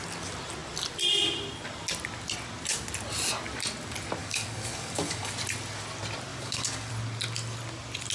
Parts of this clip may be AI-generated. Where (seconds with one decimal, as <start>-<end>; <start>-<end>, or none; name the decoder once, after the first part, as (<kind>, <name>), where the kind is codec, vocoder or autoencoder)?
4.2-5.3 (codec, DAC); 6.3-6.9